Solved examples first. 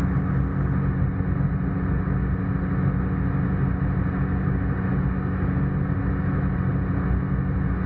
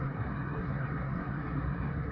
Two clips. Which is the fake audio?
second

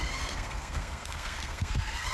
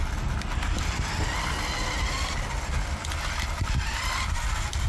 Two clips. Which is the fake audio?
first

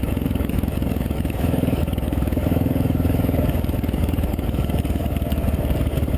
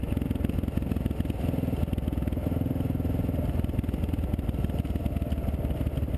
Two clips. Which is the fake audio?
first